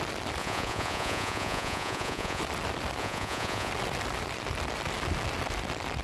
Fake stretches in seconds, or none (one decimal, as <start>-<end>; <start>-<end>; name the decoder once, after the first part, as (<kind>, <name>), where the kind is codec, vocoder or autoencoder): 0.4-2.4 (vocoder, Vocos); 3.0-3.7